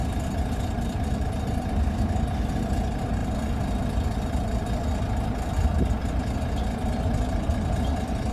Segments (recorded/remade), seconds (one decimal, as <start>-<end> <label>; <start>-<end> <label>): 0.0-8.3 recorded